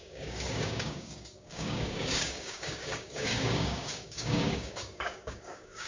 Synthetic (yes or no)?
yes